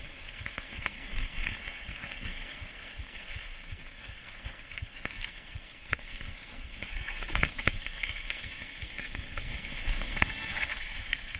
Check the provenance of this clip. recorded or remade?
remade